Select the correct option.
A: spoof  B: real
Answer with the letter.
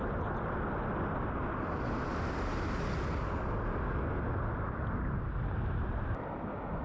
B